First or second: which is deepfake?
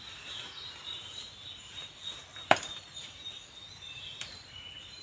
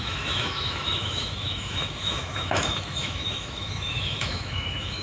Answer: second